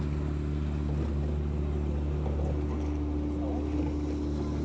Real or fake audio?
real